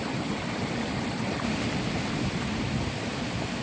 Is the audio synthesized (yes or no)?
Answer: no